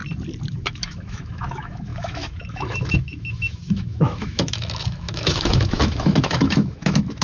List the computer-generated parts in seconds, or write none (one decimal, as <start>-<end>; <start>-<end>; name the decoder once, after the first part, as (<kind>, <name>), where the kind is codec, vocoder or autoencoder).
0.5-7.2 (autoencoder, DAC-VAE)